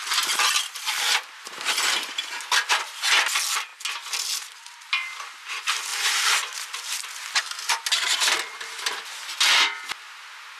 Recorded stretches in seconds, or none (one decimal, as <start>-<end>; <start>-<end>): 0.0-10.6